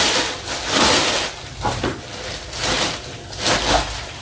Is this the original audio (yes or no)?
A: yes